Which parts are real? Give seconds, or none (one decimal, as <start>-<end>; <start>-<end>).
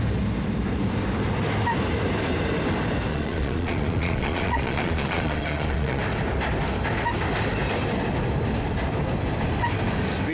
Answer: 0.0-3.1; 6.0-10.3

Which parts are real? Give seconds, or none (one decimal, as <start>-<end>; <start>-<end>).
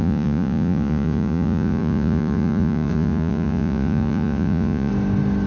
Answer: 4.9-5.5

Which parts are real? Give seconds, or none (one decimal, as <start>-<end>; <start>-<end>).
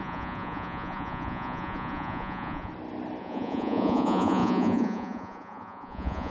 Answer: 2.7-3.2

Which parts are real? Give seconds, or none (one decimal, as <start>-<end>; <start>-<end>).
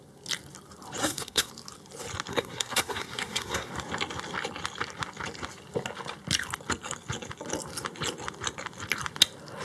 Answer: 0.0-1.0; 1.5-2.3; 3.7-9.6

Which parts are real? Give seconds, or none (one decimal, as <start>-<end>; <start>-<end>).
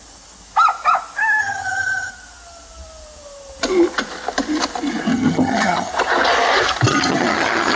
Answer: 0.0-1.4; 2.1-5.1; 5.9-6.9